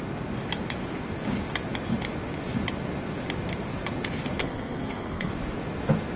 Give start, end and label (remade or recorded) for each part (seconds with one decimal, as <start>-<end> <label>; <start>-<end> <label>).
0.0-4.4 recorded; 4.4-5.3 remade; 5.3-6.2 recorded